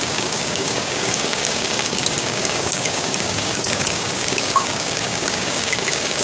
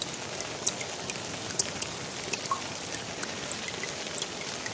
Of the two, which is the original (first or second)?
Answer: second